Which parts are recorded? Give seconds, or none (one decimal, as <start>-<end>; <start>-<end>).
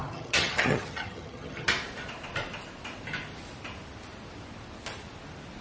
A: 1.7-5.6